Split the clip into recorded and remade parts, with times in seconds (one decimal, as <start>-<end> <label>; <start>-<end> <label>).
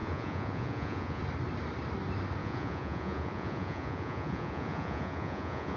0.0-1.2 remade; 1.2-2.4 recorded; 2.4-5.8 remade